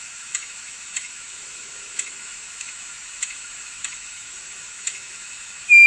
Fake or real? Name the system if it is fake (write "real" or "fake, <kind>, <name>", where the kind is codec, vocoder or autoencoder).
fake, autoencoder, DAC-VAE